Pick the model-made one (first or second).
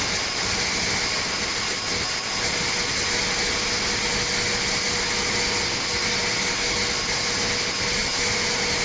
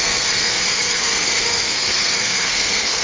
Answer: second